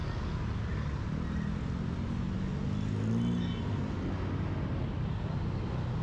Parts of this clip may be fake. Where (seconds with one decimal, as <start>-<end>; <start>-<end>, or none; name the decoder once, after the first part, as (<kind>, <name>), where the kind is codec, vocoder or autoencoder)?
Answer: none